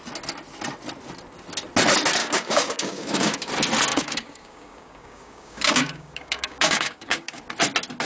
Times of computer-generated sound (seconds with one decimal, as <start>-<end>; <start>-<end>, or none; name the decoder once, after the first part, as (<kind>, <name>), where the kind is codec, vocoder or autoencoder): 2.2-3.5 (codec, DAC); 3.9-7.4